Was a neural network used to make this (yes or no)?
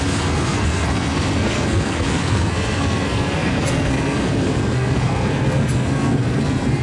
yes